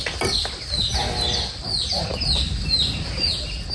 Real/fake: real